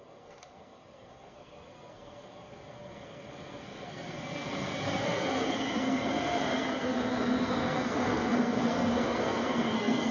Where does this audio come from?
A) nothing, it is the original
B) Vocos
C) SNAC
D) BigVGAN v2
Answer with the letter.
C